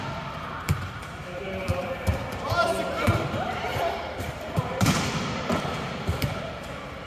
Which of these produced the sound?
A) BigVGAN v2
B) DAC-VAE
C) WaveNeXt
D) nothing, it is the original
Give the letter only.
A